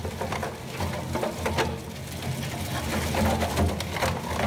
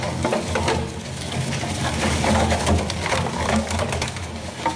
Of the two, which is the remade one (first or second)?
second